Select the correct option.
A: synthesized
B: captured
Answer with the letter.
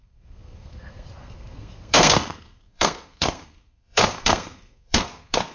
A